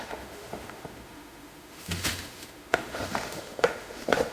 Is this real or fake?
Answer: fake